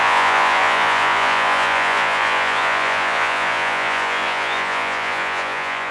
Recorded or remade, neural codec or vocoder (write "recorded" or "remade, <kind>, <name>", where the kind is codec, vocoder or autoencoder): remade, vocoder, Vocos